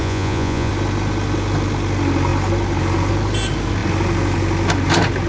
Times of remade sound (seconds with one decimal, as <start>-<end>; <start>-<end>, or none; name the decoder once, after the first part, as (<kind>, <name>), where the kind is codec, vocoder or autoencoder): 0.0-0.7 (vocoder, Vocos)